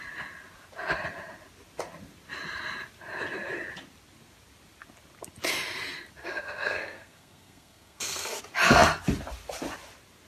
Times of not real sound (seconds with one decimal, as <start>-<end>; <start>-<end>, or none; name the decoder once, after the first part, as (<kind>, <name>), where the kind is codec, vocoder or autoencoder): 6.2-8.4 (codec, SNAC)